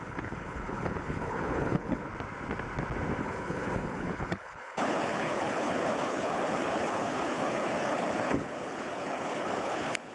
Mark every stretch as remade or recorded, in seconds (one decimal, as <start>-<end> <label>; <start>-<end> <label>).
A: 0.0-2.1 remade; 2.1-3.2 recorded; 3.2-10.1 remade